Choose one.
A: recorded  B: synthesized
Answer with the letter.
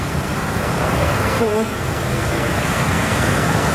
B